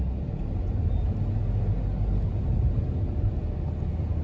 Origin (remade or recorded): recorded